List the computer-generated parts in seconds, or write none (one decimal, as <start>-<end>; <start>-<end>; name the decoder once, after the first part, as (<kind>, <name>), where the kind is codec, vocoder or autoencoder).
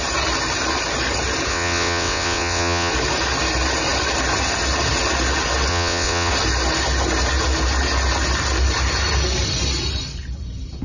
1.5-2.9 (vocoder, WaveNeXt); 5.7-6.3